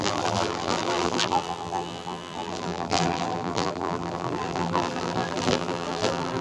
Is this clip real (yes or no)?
no